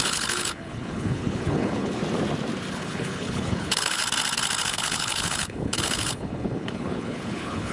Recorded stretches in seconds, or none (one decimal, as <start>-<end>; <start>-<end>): 2.0-2.7; 4.0-4.6